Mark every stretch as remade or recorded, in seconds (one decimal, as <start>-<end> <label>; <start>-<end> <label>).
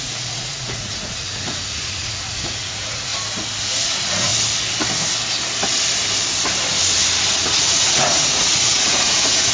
0.0-3.1 remade; 3.1-3.6 recorded; 3.6-4.3 remade; 4.3-7.3 recorded; 7.3-9.5 remade